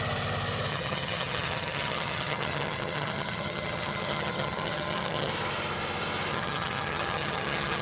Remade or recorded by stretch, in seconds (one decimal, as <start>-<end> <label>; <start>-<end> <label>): 0.0-0.7 recorded; 0.7-5.3 remade; 5.3-6.3 recorded; 6.3-7.8 remade